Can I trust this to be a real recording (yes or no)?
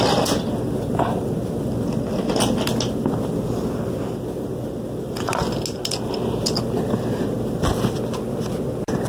yes